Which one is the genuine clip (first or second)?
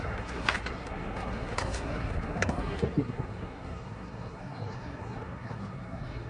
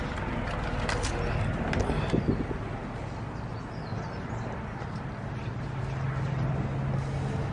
second